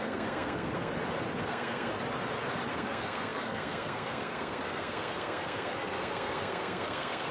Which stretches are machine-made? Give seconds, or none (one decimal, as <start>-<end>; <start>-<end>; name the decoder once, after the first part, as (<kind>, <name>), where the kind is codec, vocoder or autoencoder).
0.0-0.9 (codec, SNAC); 1.4-1.9; 2.7-7.3